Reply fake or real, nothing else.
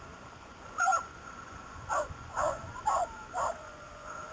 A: fake